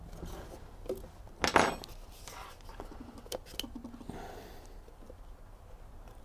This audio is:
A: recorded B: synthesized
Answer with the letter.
A